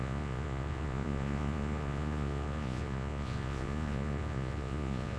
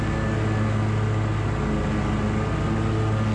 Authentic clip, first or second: second